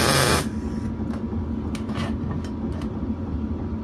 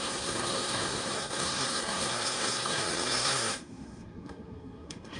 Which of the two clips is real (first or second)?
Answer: first